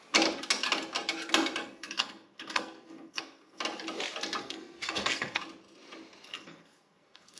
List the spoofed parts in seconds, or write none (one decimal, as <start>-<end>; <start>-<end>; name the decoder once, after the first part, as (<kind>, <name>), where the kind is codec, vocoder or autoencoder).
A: 1.6-3.6 (codec, SNAC); 4.4-5.4; 6.3-7.4